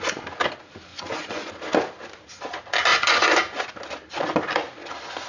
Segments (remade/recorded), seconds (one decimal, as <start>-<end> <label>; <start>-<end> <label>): 0.0-0.9 recorded; 0.9-1.5 remade; 1.5-2.9 recorded; 2.9-3.4 remade; 3.4-5.3 recorded